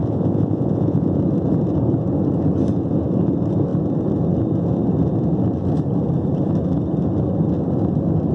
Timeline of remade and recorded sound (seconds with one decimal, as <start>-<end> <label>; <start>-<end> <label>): 0.0-1.2 remade; 1.2-8.3 recorded